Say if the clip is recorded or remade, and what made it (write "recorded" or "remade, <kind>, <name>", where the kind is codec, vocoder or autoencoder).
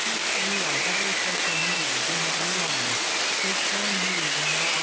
recorded